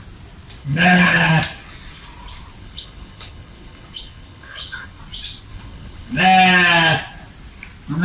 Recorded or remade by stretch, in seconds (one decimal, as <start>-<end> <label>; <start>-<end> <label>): 0.0-0.6 recorded; 0.6-1.3 remade; 1.3-2.6 recorded; 2.6-5.0 remade; 5.0-5.5 recorded; 5.5-6.2 remade; 6.2-8.0 recorded